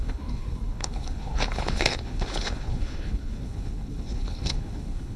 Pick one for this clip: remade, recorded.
remade